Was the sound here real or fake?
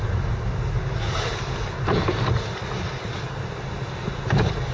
real